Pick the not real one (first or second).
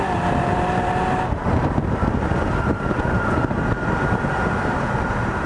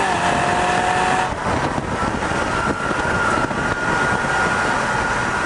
first